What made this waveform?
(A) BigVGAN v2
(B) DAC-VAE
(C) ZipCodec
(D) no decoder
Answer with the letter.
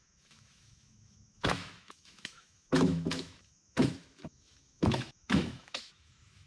B